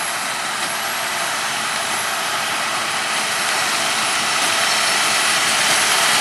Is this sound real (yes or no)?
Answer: yes